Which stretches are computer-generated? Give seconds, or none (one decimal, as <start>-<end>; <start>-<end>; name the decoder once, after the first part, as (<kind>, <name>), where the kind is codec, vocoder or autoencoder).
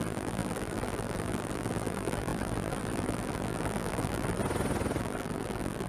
0.0-4.4 (vocoder, BigVGAN v2); 5.0-5.9